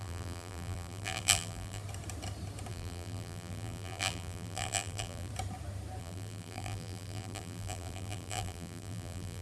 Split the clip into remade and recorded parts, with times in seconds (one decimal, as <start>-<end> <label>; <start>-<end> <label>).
0.0-1.8 remade; 1.8-2.7 recorded; 2.7-5.3 remade; 5.3-6.0 recorded; 6.0-9.4 remade